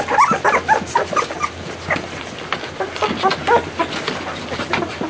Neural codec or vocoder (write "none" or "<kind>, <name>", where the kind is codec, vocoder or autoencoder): none